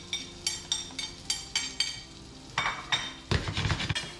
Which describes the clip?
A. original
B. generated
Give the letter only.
A